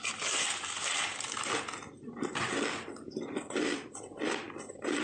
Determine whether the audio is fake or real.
real